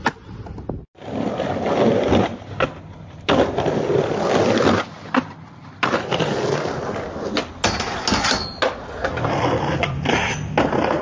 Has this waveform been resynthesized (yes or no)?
no